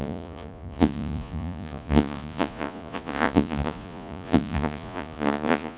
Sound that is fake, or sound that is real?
fake